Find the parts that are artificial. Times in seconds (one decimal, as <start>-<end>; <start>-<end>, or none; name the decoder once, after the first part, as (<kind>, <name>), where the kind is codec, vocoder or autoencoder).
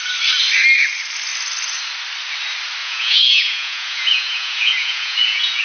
2.8-5.6 (vocoder, Vocos)